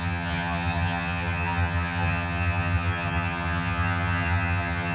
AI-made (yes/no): yes